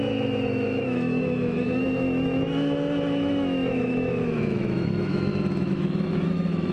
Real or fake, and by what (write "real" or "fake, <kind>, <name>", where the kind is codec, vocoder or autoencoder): fake, autoencoder, DAC-VAE